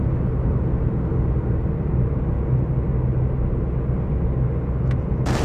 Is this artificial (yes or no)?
no